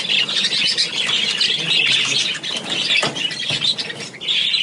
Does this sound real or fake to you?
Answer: real